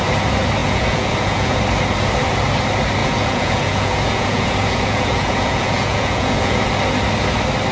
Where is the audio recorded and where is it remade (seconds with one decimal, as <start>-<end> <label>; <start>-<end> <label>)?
0.0-0.6 recorded; 0.6-1.6 remade; 1.6-3.0 recorded; 3.0-6.7 remade; 6.7-7.7 recorded